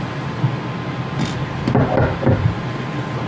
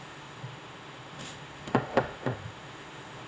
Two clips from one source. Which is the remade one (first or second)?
second